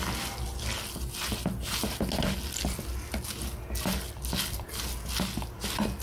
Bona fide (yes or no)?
yes